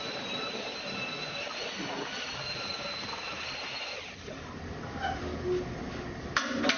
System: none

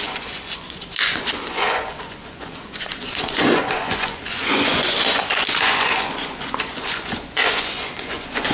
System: vocoder, Vocos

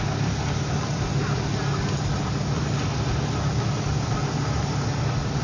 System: none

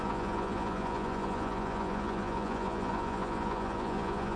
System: vocoder, Vocos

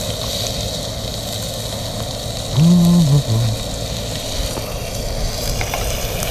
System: none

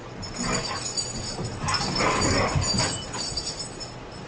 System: none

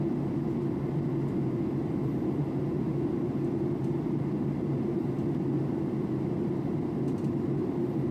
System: none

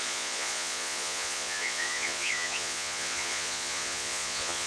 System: vocoder, Vocos